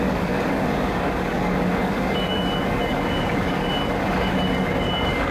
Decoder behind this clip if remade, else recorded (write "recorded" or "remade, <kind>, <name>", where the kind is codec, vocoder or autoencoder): remade, codec, DAC